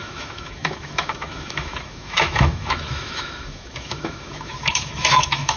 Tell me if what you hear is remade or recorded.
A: remade